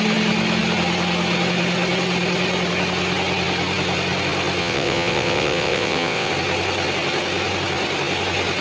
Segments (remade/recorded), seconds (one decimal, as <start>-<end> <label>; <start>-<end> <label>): 0.0-4.6 recorded; 4.6-6.3 remade; 6.3-8.6 recorded